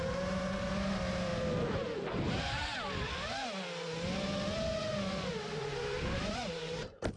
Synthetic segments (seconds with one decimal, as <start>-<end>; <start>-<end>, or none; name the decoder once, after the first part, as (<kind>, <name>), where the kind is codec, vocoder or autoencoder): 0.0-1.3 (vocoder, BigVGAN v2); 5.6-7.2